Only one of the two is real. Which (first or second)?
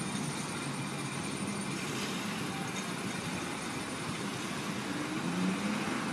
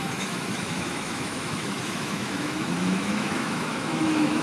first